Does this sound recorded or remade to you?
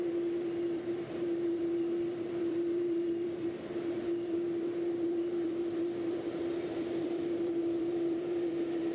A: remade